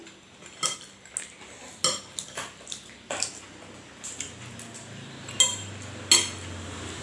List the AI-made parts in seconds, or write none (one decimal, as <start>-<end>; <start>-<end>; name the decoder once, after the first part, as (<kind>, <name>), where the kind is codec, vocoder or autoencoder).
none